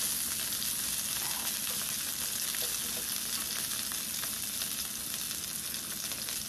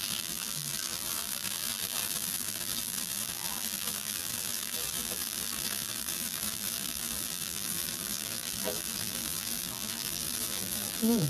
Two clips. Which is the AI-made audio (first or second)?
second